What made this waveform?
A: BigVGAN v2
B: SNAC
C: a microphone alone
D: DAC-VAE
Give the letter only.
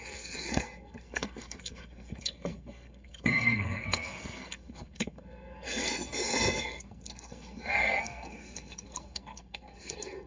B